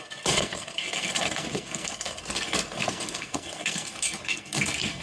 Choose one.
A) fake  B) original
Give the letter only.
A